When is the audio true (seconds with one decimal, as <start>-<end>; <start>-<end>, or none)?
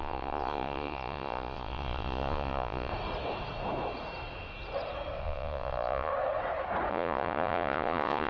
2.9-5.2; 6.1-6.9